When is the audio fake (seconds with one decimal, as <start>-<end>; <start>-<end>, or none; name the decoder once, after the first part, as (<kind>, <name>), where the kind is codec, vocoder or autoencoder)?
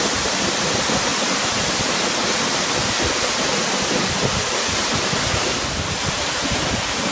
none